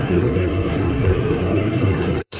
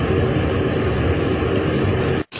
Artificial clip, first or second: first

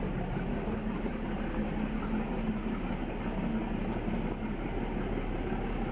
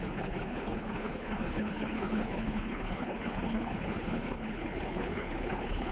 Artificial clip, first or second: second